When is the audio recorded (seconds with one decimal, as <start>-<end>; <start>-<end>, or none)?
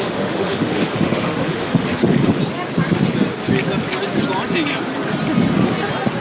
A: 2.4-6.2